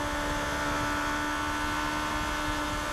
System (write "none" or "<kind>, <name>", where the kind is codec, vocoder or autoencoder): none